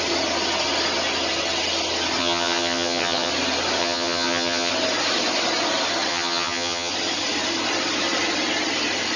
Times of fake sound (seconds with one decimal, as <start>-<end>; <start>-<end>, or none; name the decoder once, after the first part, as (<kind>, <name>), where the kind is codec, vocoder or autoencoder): 2.2-3.3 (vocoder, HiFi-GAN); 3.8-4.7; 6.1-6.9

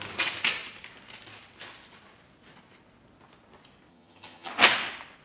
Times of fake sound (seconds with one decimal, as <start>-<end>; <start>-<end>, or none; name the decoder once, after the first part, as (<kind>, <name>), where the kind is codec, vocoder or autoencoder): 3.9-4.5 (vocoder, HiFi-GAN)